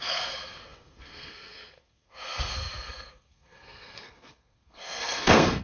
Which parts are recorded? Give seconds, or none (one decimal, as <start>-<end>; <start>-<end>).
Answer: none